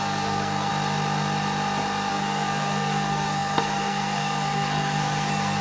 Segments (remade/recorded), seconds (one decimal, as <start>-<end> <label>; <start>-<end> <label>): 0.0-0.7 remade; 0.7-2.1 recorded; 2.1-5.6 remade